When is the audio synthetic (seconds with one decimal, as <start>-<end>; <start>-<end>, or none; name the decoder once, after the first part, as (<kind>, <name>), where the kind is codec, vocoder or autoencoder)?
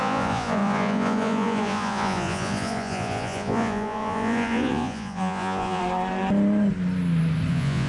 0.0-5.8 (vocoder, Vocos); 7.5-7.9